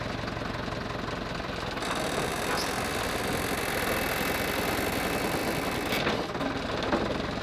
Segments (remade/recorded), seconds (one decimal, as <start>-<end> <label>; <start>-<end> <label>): 0.0-7.4 recorded